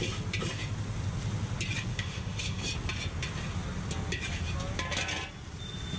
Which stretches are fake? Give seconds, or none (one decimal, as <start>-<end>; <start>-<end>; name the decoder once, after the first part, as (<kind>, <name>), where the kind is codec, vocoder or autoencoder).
1.9-2.6 (autoencoder, DAC-VAE)